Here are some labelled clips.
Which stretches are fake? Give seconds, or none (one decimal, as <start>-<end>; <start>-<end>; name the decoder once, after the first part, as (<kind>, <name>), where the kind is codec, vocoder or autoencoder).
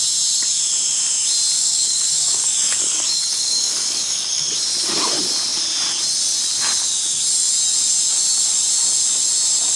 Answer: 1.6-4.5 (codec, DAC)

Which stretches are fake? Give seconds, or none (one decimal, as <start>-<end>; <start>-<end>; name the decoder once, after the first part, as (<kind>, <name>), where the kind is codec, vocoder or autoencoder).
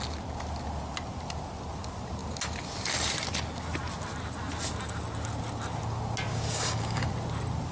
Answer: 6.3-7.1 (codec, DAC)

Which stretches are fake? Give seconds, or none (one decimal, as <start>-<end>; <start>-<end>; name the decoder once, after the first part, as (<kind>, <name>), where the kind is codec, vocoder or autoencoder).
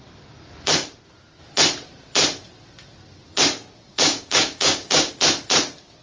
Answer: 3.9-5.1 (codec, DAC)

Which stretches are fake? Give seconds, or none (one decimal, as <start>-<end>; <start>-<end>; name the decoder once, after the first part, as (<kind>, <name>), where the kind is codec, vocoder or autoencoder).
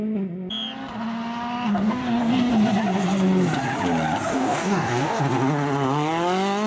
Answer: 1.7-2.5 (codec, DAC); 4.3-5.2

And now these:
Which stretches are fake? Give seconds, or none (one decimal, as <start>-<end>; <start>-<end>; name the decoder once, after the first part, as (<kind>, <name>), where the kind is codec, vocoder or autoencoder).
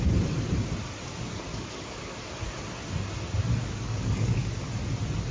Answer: 1.5-2.2 (codec, DAC); 3.6-4.6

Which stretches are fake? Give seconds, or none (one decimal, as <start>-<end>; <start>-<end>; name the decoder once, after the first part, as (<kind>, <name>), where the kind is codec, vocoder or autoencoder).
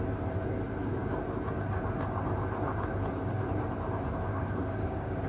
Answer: 4.3-5.3 (codec, DAC)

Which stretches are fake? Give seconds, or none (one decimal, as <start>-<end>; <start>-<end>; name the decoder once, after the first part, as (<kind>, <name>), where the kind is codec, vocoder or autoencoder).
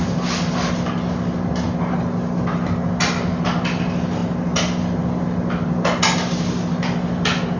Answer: none